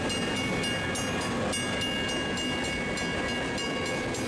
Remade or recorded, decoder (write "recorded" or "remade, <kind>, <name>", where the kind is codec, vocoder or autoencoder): recorded